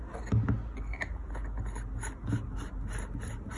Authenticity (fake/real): real